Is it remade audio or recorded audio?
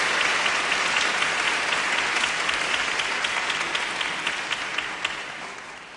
recorded